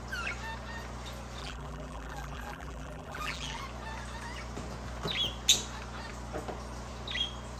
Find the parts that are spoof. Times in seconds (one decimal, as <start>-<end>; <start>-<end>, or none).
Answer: 1.4-3.6